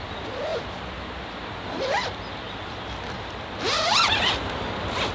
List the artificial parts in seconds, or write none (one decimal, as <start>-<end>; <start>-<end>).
none